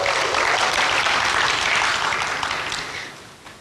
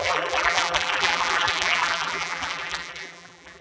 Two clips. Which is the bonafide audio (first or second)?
first